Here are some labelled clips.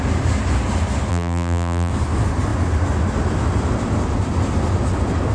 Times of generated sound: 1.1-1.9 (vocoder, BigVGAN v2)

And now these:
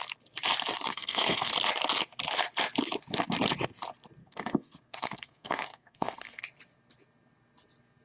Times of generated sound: 0.9-1.5 (codec, SNAC); 4.2-6.4

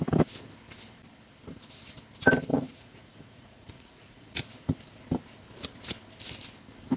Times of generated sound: 2.5-4.5 (vocoder, Vocos)

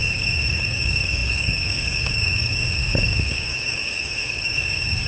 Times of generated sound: 0.0-5.1 (codec, DAC)

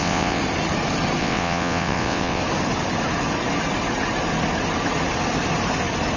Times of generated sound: 0.0-0.4 (vocoder, WaveNeXt); 1.2-2.4

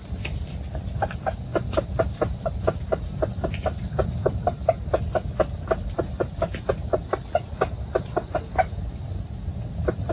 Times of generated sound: none